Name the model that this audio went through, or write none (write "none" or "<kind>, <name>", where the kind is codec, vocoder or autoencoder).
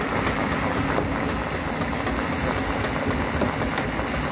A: none